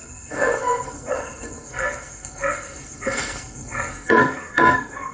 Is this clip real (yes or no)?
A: no